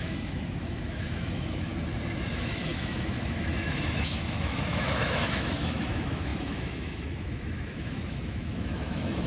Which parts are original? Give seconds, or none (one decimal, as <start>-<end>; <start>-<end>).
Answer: 1.7-2.3